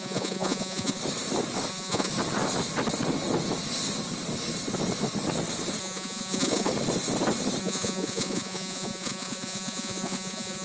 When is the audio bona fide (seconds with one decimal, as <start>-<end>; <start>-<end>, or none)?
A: 1.0-1.7; 2.1-5.8; 6.7-7.6